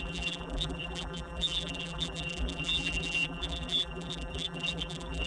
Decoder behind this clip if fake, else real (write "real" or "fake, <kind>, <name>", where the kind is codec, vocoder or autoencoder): fake, vocoder, BigVGAN v2